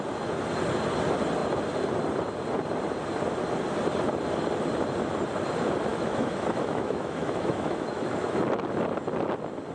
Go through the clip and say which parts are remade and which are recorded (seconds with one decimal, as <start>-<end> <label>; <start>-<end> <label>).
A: 0.0-5.9 recorded; 5.9-8.5 remade; 8.5-9.7 recorded

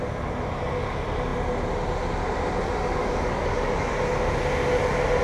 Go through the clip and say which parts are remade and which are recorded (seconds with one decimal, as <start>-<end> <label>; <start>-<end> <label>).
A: 0.0-3.0 recorded; 3.0-4.1 remade; 4.1-5.2 recorded

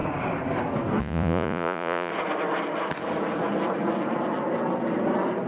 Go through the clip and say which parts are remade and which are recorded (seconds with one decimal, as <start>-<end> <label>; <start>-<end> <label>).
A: 0.0-1.0 recorded; 1.0-2.1 remade; 2.1-5.5 recorded

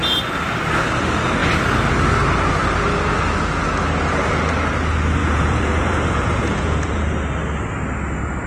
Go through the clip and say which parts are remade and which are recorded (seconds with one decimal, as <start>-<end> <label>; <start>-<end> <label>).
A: 0.0-5.2 recorded; 5.2-7.1 remade; 7.1-8.5 recorded

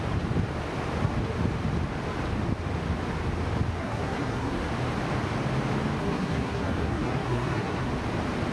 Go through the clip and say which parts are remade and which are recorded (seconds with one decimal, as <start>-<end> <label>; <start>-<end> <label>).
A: 0.0-3.8 recorded; 3.8-4.7 remade; 4.7-6.0 recorded; 6.0-7.9 remade; 7.9-8.5 recorded

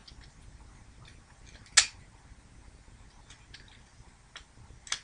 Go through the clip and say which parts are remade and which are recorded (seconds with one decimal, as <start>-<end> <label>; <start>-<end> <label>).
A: 0.0-5.0 recorded